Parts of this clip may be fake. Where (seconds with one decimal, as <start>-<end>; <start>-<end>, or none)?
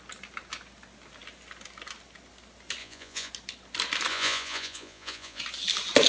2.8-3.3; 4.1-5.4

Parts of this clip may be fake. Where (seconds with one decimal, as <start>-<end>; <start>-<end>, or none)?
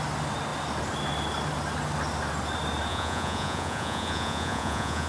2.9-5.1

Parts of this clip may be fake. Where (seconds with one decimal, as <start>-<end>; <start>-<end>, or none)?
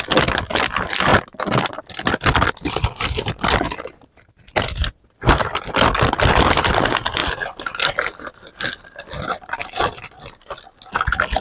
none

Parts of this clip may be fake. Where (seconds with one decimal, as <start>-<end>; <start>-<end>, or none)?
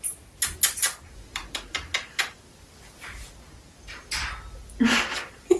none